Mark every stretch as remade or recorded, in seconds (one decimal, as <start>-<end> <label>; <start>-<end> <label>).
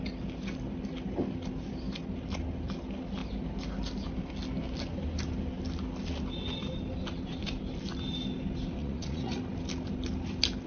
0.0-8.8 recorded; 8.8-9.4 remade; 9.4-10.7 recorded